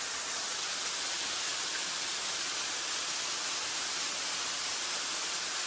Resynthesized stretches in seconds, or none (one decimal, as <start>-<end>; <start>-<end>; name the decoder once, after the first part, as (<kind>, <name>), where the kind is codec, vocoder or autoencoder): none